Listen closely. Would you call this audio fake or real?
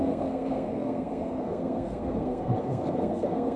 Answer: fake